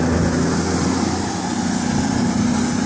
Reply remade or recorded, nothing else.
recorded